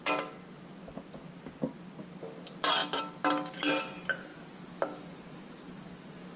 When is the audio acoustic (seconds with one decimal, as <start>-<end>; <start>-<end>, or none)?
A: 0.0-6.4